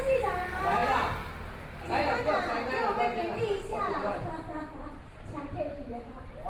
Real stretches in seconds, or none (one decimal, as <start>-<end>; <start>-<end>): none